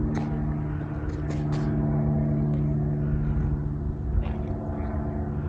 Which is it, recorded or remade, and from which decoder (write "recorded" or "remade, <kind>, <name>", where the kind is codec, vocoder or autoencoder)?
recorded